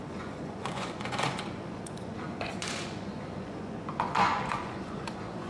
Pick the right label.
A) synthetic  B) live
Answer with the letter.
A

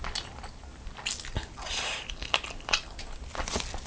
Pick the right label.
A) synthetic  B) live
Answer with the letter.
B